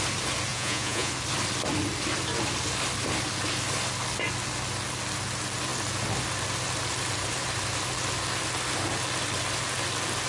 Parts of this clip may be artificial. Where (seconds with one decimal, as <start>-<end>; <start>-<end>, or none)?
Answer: 0.5-1.1